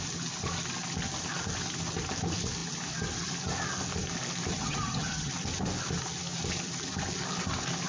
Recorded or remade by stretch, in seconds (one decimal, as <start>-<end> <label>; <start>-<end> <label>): 0.0-4.5 recorded; 4.5-5.3 remade; 5.3-7.9 recorded